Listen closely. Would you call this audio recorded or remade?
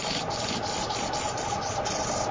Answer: recorded